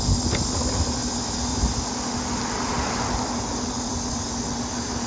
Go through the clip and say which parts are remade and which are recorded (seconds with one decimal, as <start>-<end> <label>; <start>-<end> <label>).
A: 0.0-5.1 recorded